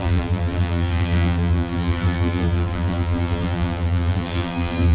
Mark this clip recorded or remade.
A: remade